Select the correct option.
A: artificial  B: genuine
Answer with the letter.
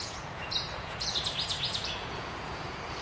A